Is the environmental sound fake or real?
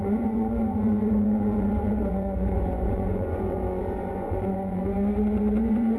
fake